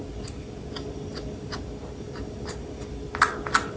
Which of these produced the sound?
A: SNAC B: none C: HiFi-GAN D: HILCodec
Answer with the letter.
B